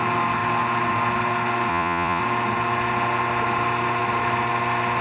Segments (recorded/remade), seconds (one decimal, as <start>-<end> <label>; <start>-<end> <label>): 0.0-1.7 recorded; 1.7-2.2 remade; 2.2-5.0 recorded